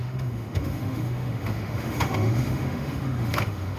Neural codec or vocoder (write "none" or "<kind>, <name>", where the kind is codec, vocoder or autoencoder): autoencoder, DAC-VAE